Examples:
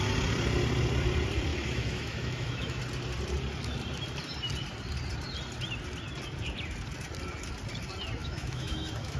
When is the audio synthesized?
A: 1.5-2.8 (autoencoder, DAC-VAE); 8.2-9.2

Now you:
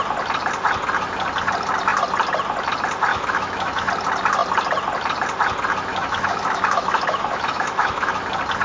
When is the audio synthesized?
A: 3.1-3.9 (autoencoder, DAC-VAE); 5.9-8.1

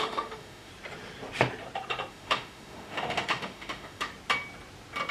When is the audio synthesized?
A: 0.0-0.7 (autoencoder, DAC-VAE); 2.1-4.1

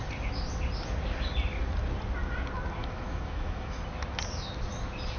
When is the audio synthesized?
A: 2.8-3.8 (autoencoder, DAC-VAE)